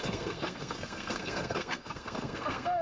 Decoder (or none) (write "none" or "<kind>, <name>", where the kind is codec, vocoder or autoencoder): codec, SNAC